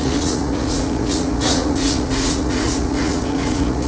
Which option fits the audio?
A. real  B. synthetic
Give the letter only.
B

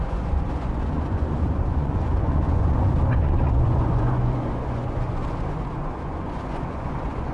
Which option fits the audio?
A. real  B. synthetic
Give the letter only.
B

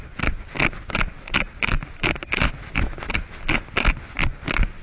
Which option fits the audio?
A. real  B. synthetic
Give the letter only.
A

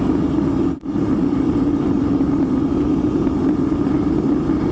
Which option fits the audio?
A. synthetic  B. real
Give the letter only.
B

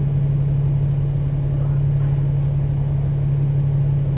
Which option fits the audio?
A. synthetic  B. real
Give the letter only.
B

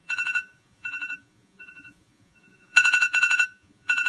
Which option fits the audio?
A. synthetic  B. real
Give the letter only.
A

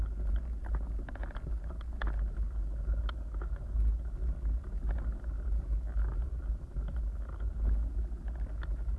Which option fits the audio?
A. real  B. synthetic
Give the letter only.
A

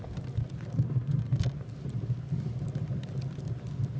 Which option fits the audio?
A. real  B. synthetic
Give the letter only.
A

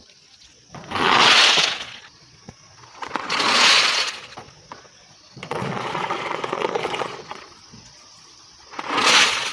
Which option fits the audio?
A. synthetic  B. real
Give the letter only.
A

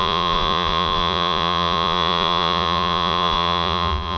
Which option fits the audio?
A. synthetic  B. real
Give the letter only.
A